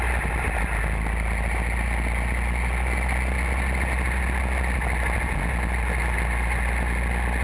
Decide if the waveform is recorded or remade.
recorded